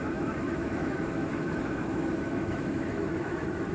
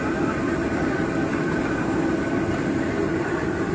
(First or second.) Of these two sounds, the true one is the second